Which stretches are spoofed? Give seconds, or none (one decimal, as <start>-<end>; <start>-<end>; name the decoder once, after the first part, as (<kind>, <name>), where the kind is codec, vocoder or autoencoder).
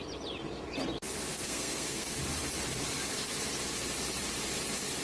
1.3-2.2 (codec, SNAC)